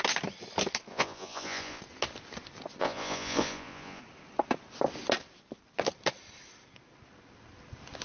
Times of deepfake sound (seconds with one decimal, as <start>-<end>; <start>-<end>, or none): 0.9-1.8; 2.8-4.0